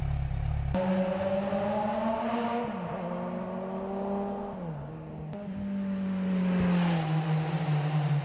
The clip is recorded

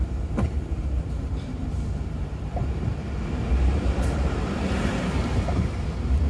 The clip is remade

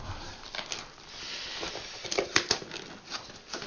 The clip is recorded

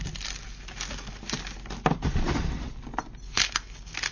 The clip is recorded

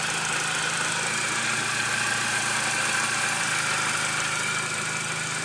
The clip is recorded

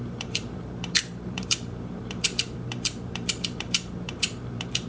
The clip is remade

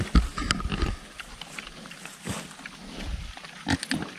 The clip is recorded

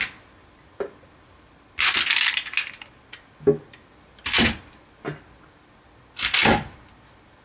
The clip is recorded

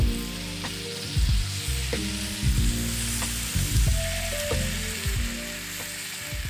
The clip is recorded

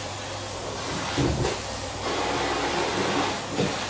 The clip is remade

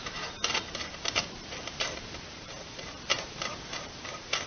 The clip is remade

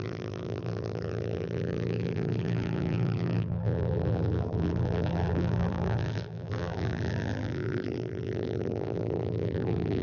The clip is remade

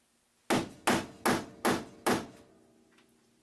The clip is recorded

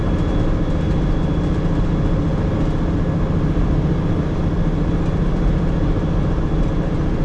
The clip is recorded